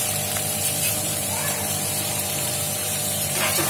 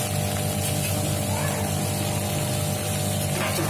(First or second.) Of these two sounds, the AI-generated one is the first